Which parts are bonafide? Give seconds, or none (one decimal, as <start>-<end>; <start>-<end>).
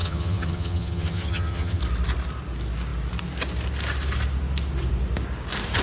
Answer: 1.8-5.8